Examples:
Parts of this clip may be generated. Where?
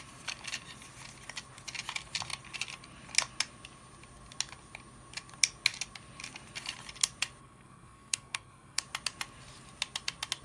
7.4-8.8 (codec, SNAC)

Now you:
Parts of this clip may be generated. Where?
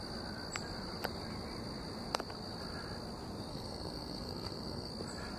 3.5-4.9 (codec, SNAC)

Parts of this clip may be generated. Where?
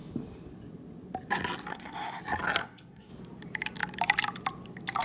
1.7-2.2 (codec, SNAC); 2.6-3.1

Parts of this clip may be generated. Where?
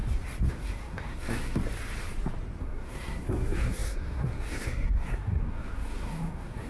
0.5-1.6 (codec, SNAC); 2.6-6.7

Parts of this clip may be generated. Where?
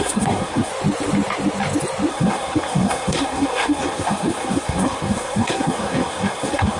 0.0-0.7 (codec, SNAC); 2.1-6.8